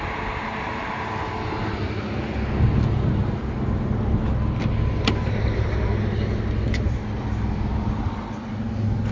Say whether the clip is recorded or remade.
recorded